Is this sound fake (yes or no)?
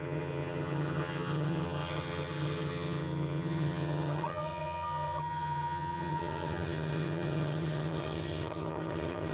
yes